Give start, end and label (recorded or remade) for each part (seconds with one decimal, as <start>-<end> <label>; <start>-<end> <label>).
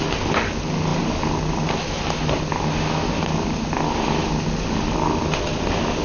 0.0-6.0 recorded